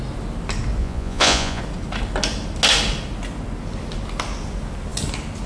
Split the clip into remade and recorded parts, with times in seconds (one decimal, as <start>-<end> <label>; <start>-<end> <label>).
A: 0.0-0.8 recorded; 0.8-1.6 remade; 1.6-5.5 recorded